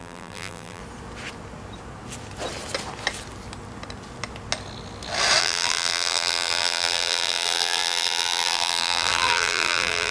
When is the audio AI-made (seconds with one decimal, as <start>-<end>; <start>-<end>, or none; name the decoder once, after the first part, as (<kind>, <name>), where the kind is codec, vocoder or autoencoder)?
0.0-0.8 (vocoder, BigVGAN v2); 5.4-10.1